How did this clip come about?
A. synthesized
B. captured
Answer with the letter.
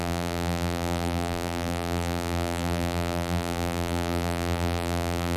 A